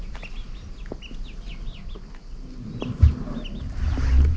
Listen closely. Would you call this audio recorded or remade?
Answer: recorded